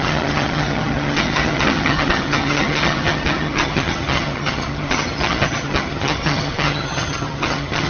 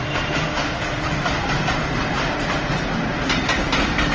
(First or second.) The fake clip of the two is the first